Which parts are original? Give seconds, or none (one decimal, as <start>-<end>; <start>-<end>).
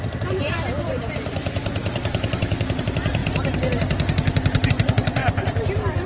3.2-4.7